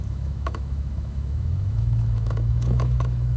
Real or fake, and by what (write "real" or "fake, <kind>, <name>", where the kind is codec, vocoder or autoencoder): fake, autoencoder, DAC-VAE